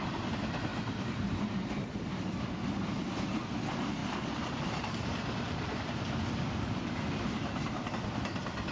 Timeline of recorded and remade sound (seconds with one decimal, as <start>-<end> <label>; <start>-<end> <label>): 0.0-0.7 recorded; 0.7-1.7 remade; 1.7-4.0 recorded; 4.0-7.9 remade; 7.9-8.7 recorded